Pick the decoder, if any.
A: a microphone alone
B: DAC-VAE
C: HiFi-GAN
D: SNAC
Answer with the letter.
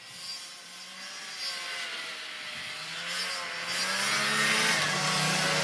A